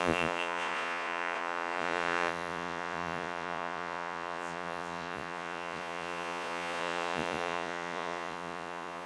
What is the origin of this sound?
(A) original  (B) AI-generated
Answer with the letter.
B